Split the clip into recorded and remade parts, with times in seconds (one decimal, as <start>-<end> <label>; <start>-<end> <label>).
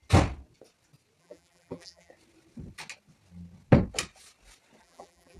0.0-1.2 recorded; 1.2-2.1 remade; 2.1-4.8 recorded; 4.8-5.4 remade